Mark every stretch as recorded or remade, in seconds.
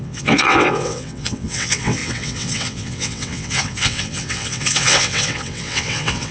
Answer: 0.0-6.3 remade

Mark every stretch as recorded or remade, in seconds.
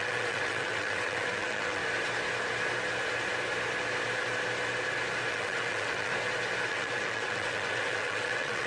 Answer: 0.0-1.8 remade; 1.8-5.3 recorded; 5.3-6.1 remade; 6.1-6.7 recorded; 6.7-8.7 remade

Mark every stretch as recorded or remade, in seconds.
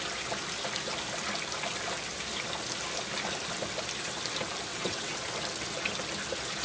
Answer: 0.0-4.7 recorded; 4.7-5.2 remade; 5.2-6.6 recorded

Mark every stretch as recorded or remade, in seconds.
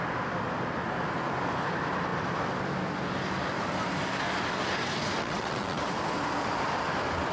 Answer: 0.0-5.2 recorded; 5.2-5.8 remade; 5.8-7.3 recorded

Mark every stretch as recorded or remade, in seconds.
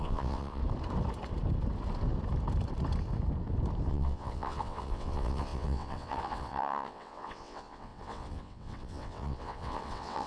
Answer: 0.0-0.6 remade; 0.6-3.9 recorded; 3.9-10.3 remade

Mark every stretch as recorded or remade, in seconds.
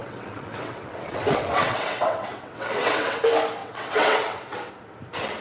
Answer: 0.0-3.2 remade; 3.2-3.6 recorded; 3.6-4.7 remade; 4.7-5.4 recorded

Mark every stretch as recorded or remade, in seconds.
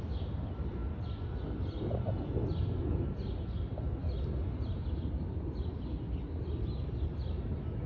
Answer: 0.0-7.9 recorded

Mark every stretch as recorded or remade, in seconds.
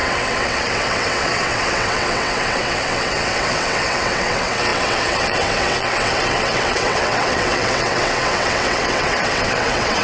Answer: 0.0-10.0 remade